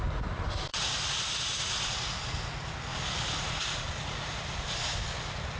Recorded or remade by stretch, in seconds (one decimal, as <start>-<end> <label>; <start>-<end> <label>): 0.0-0.7 recorded; 0.7-2.2 remade; 2.2-5.6 recorded